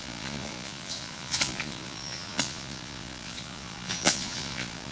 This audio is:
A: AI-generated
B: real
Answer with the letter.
A